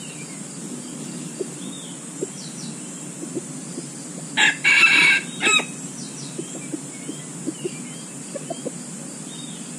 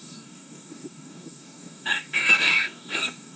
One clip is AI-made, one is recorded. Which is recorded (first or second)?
first